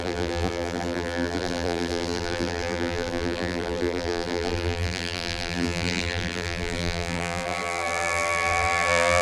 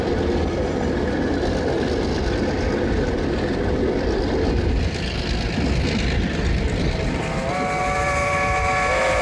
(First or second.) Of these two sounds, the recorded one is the second